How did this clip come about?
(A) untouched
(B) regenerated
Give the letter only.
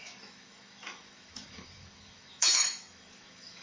B